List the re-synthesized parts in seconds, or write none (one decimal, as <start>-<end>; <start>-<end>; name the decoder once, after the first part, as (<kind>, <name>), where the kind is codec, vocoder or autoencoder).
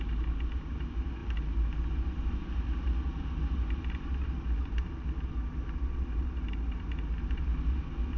none